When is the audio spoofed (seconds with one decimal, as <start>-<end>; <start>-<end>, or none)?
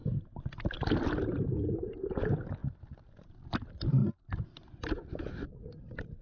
none